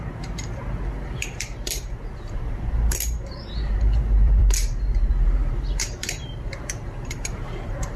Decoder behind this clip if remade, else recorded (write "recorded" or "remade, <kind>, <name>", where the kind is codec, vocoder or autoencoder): remade, vocoder, BigVGAN v2